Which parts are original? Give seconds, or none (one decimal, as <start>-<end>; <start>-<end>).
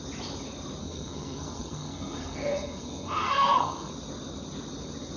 0.0-0.8; 3.9-5.2